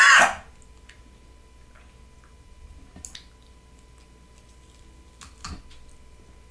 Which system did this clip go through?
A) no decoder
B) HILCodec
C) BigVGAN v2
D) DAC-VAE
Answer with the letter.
A